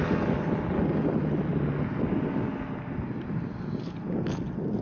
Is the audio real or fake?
real